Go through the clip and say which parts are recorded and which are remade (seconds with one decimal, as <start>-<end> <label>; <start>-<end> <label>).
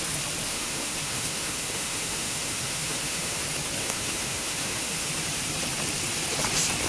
0.0-0.5 recorded; 0.5-3.4 remade; 3.4-3.8 recorded; 3.8-5.1 remade; 5.1-6.9 recorded